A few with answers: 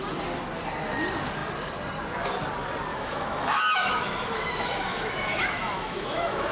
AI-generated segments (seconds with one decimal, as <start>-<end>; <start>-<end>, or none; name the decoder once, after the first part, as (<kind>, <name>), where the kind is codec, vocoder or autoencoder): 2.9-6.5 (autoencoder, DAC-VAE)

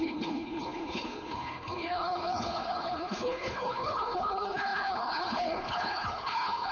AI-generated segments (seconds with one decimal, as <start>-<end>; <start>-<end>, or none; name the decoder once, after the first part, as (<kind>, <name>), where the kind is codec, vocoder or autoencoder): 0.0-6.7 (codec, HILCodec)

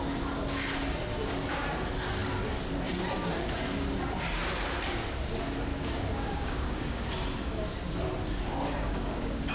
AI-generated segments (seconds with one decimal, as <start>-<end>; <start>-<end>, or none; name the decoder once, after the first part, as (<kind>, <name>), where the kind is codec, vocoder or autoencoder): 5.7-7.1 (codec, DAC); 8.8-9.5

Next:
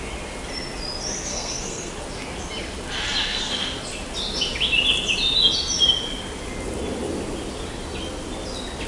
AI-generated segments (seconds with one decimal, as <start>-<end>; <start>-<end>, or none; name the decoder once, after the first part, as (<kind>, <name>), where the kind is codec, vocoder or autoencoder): 1.3-1.9 (codec, SNAC); 3.2-3.8